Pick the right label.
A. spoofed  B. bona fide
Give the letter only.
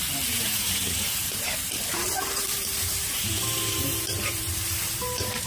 A